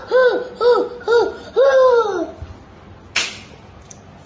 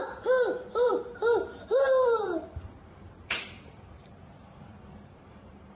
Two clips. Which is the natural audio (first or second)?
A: first